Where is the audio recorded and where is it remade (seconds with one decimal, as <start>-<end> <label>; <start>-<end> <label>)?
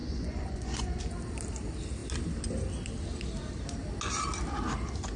0.0-1.0 remade; 1.0-5.2 recorded